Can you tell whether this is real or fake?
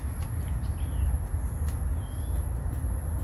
real